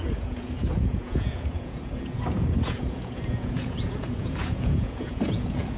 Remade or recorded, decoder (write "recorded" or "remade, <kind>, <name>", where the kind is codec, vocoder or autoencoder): remade, vocoder, Vocos